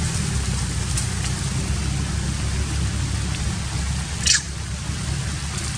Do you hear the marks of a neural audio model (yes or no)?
no